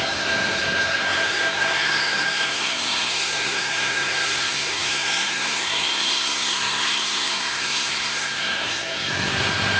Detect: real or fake fake